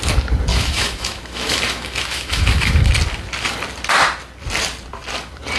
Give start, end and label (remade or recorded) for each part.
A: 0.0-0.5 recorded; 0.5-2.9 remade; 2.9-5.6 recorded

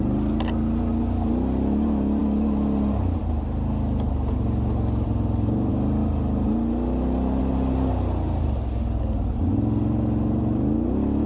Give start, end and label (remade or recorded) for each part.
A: 0.0-11.3 recorded

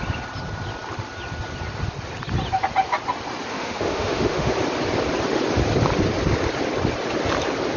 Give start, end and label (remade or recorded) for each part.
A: 0.0-3.5 recorded; 3.5-4.5 remade; 4.5-7.8 recorded